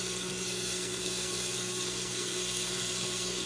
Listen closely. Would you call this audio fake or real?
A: fake